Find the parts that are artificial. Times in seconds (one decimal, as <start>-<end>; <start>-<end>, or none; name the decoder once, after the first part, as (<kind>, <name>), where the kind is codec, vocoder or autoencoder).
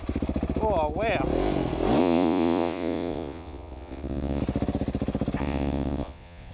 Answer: 2.0-4.4 (vocoder, Vocos); 5.4-6.5